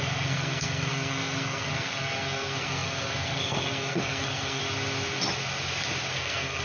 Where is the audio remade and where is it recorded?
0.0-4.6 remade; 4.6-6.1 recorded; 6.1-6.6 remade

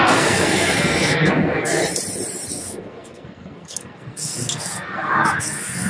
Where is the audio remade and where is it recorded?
0.0-1.8 remade; 1.8-2.5 recorded; 2.5-5.9 remade

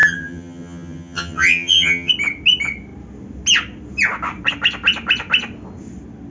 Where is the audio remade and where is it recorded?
0.0-2.1 remade; 2.1-6.3 recorded

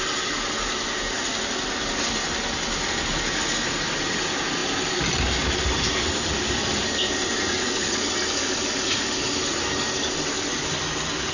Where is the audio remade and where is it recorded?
0.0-11.3 recorded

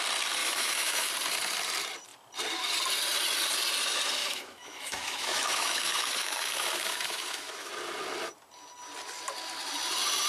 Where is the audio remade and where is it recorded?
0.0-0.4 recorded; 0.4-1.1 remade; 1.1-4.2 recorded; 4.2-7.7 remade; 7.7-10.3 recorded